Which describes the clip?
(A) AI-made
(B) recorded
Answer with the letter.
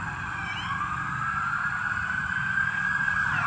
B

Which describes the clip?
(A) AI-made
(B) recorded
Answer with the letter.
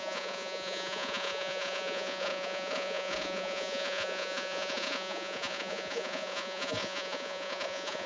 A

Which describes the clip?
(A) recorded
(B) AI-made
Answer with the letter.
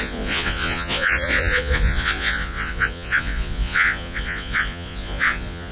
B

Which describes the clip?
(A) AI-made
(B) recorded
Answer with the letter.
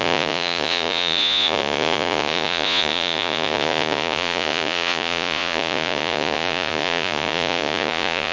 A